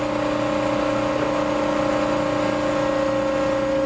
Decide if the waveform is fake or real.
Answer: real